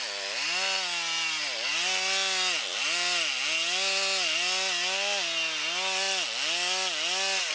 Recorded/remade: recorded